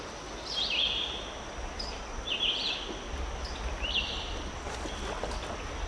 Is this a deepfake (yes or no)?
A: no